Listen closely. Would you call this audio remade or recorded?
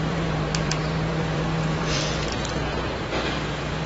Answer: remade